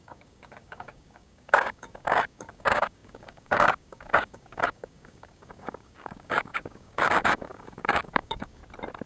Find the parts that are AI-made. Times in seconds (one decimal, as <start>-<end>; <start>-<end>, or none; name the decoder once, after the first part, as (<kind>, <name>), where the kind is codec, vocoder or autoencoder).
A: 0.0-8.6 (codec, DAC)